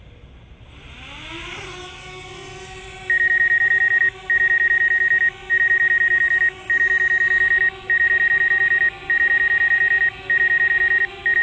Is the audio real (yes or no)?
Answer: yes